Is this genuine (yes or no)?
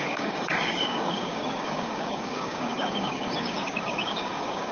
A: no